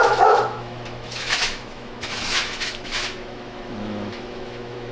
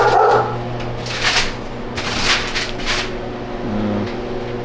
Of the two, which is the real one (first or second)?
second